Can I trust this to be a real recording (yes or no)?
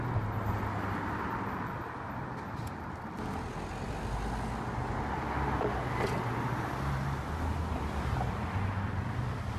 yes